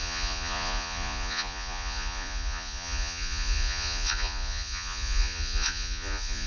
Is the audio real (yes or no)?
no